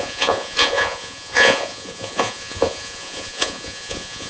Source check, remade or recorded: remade